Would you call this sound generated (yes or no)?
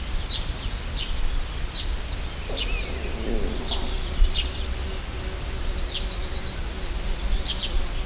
no